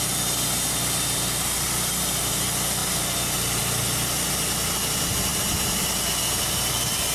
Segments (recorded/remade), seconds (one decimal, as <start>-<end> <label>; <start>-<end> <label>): 0.0-7.1 recorded